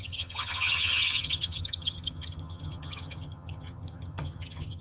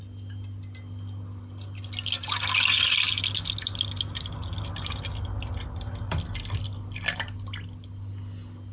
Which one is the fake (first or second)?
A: first